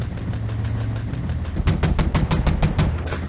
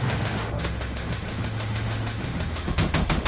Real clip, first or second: first